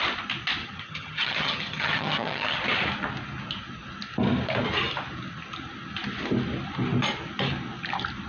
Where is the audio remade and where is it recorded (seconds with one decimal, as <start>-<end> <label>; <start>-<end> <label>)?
0.0-0.6 recorded; 0.6-2.6 remade; 2.6-8.3 recorded